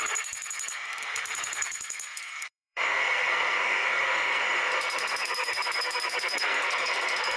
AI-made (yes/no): yes